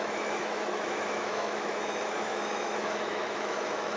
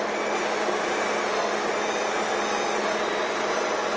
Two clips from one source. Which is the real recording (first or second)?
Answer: second